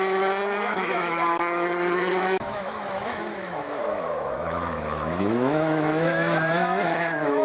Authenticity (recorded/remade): remade